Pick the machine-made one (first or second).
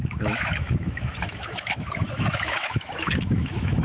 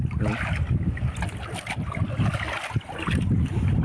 first